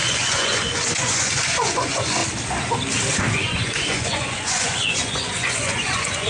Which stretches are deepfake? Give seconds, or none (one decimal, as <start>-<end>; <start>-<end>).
0.0-2.2; 3.3-6.3